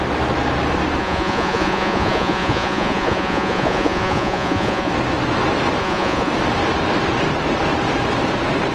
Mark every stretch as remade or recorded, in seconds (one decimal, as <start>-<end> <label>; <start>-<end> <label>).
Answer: 0.0-1.0 recorded; 1.0-4.9 remade; 4.9-5.8 recorded; 5.8-6.3 remade; 6.3-8.7 recorded